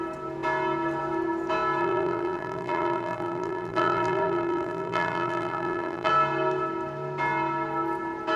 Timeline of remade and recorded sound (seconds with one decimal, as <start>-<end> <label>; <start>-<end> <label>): 0.0-1.8 recorded; 1.8-6.1 remade; 6.1-8.4 recorded